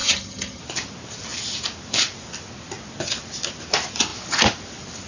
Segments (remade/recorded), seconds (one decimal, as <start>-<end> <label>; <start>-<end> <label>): 0.0-0.6 remade; 0.6-5.1 recorded